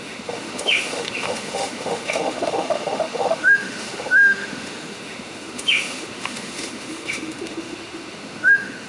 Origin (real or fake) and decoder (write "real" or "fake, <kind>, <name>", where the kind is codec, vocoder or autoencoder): fake, autoencoder, DAC-VAE